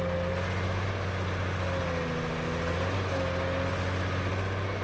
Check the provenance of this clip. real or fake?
real